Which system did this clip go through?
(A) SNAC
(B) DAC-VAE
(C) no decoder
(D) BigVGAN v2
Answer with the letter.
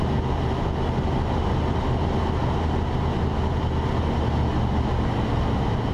C